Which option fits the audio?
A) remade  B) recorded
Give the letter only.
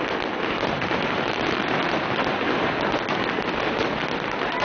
B